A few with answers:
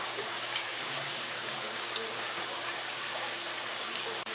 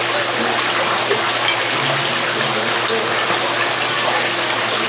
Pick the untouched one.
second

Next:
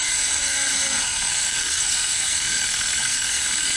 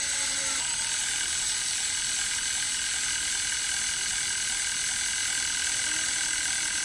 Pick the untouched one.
second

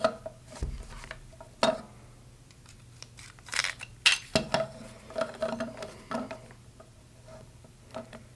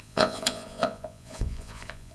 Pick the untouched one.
first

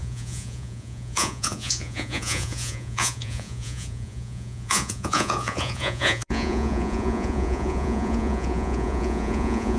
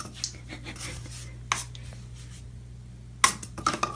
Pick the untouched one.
second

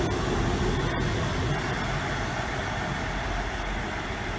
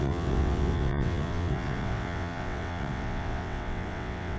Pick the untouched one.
first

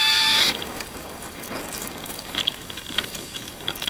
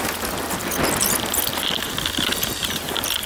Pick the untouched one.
second